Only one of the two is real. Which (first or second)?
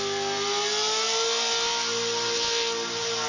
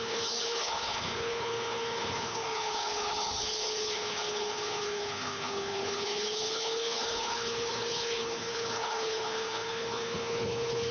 first